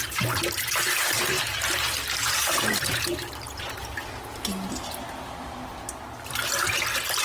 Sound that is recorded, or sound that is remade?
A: remade